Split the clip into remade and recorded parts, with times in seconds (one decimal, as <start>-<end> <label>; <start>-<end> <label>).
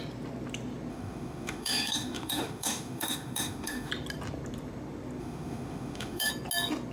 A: 0.0-0.9 recorded; 0.9-3.9 remade; 3.9-5.2 recorded; 5.2-6.3 remade; 6.3-6.9 recorded